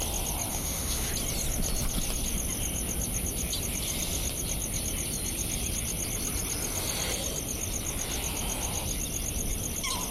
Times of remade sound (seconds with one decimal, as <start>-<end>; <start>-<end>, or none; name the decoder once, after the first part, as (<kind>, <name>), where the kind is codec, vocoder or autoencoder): 0.5-1.1 (autoencoder, DAC-VAE)